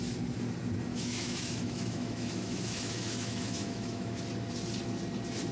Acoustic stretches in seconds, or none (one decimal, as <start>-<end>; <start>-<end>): 0.0-0.9; 4.2-5.5